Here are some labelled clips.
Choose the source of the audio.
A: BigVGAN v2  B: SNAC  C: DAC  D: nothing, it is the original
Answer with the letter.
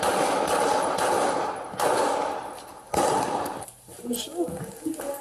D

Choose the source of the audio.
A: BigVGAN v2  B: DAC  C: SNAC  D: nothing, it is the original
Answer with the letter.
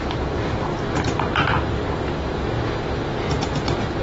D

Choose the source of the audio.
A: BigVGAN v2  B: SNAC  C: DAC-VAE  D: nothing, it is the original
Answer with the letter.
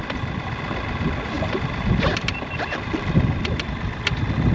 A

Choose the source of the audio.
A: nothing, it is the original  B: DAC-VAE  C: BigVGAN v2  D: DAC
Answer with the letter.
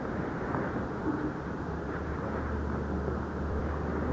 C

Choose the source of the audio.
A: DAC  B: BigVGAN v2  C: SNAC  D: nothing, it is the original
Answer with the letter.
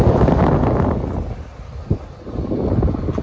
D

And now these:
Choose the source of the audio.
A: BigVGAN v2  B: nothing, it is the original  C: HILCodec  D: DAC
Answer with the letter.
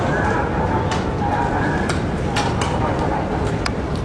B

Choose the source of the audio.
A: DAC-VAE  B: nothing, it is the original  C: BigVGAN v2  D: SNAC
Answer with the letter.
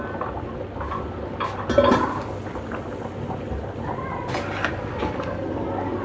B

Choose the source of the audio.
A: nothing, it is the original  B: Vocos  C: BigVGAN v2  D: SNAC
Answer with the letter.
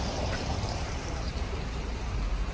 C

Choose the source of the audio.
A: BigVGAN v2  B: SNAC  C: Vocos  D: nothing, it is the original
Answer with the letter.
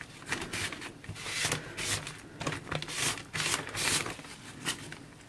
D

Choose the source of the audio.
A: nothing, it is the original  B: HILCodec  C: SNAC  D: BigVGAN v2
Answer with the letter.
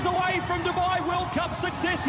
D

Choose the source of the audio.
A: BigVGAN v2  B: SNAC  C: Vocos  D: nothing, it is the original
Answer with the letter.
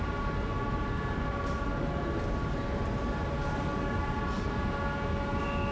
D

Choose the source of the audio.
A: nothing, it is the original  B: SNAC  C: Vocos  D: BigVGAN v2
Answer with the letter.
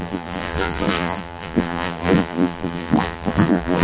D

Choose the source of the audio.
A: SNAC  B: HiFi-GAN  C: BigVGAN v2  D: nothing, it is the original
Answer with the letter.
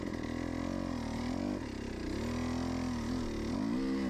D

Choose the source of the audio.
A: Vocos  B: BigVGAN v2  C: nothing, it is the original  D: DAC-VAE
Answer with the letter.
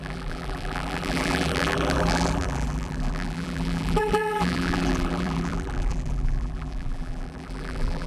B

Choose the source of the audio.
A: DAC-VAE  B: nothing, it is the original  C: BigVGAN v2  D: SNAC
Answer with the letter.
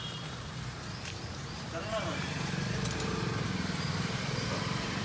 C